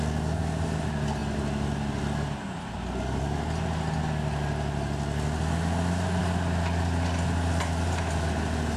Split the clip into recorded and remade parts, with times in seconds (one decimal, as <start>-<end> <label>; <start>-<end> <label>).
0.0-8.8 recorded

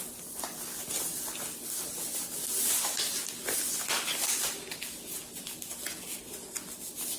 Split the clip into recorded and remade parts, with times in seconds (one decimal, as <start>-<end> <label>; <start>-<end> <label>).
0.0-6.1 recorded; 6.1-6.7 remade; 6.7-7.2 recorded

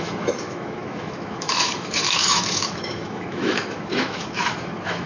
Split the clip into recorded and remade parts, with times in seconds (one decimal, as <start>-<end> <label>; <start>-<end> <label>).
0.0-5.1 remade

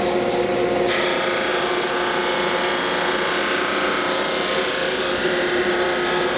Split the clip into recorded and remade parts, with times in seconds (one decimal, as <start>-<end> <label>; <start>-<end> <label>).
0.0-6.4 recorded

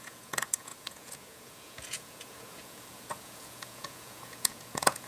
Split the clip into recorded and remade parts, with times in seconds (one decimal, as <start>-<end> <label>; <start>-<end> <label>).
0.0-5.1 remade

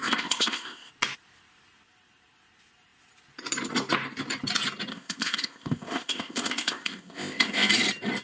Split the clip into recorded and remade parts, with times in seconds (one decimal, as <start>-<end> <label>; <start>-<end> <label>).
0.0-0.9 remade; 0.9-4.9 recorded; 4.9-7.7 remade; 7.7-8.2 recorded

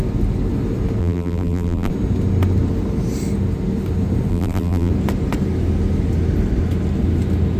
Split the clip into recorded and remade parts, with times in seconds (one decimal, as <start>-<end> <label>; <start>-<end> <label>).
0.0-1.0 recorded; 1.0-1.9 remade; 1.9-4.3 recorded; 4.3-4.9 remade; 4.9-7.6 recorded

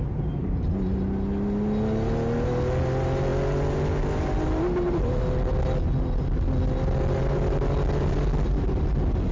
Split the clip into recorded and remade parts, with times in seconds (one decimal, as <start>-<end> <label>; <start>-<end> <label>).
0.0-9.3 recorded